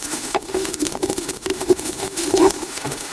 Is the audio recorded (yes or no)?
no